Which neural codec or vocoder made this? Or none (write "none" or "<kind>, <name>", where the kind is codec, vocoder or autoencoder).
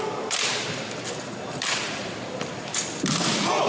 vocoder, BigVGAN v2